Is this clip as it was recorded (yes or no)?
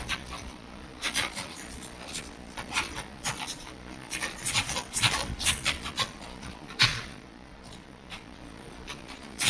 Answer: no